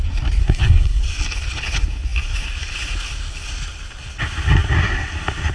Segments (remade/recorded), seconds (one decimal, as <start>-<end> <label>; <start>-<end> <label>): 0.0-0.4 recorded; 0.4-1.0 remade; 1.0-5.5 recorded